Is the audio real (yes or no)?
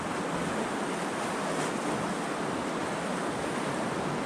yes